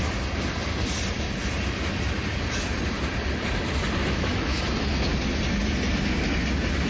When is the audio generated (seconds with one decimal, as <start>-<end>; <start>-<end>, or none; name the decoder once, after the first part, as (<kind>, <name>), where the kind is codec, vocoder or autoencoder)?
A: 4.0-4.6 (autoencoder, DAC-VAE)